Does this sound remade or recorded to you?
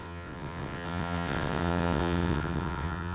remade